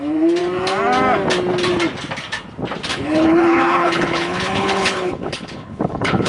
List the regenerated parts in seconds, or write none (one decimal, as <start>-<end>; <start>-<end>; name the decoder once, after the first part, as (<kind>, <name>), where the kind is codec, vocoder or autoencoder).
2.9-6.3 (codec, HILCodec)